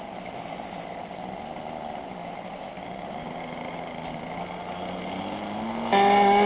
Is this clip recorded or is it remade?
recorded